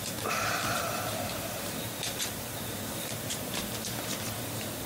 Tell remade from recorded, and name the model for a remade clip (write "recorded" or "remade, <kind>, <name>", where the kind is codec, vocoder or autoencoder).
remade, vocoder, BigVGAN v2